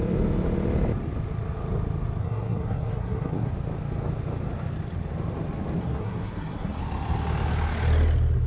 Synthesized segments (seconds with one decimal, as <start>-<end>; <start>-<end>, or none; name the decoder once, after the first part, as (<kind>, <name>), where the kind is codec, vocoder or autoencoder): 2.2-3.5 (codec, SNAC); 5.8-6.8